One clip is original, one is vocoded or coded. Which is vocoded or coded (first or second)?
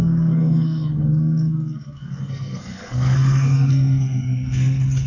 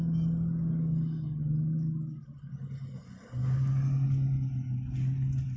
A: first